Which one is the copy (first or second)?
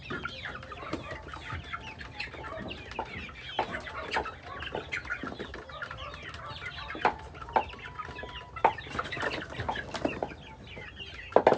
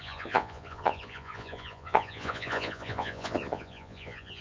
second